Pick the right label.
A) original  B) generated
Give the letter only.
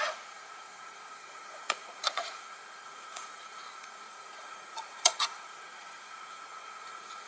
B